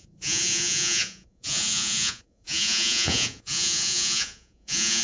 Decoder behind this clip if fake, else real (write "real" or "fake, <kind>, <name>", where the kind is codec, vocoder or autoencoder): fake, vocoder, Vocos